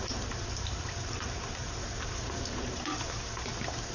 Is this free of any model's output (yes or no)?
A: no